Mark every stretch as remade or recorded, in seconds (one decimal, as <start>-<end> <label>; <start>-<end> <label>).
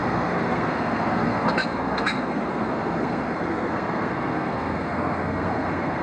0.0-6.0 remade